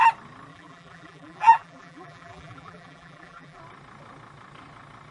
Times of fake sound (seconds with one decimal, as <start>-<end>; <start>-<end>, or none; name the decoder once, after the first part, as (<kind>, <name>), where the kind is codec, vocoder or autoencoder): 0.5-3.6 (vocoder, BigVGAN v2)